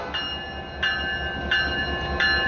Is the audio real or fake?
real